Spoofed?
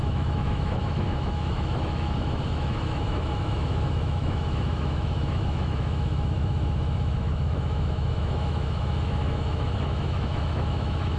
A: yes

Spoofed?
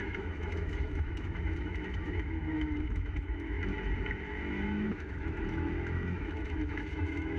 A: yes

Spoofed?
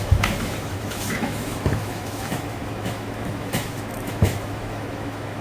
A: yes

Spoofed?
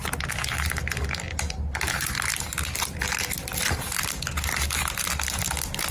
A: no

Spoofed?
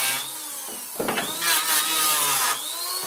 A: no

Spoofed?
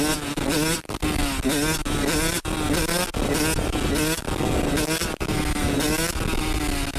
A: no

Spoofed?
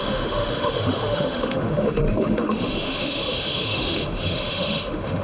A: yes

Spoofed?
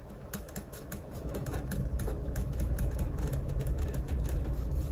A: yes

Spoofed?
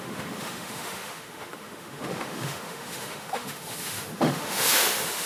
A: yes